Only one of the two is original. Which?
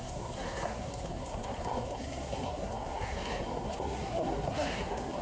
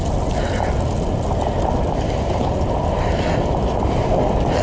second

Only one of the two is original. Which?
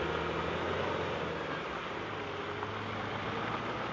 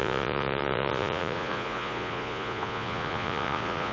first